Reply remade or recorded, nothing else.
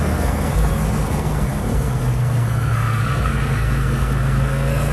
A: remade